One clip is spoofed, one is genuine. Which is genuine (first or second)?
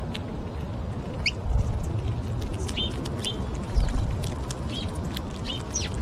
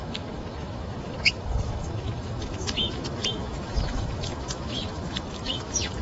first